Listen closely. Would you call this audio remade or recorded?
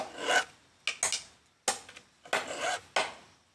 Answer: recorded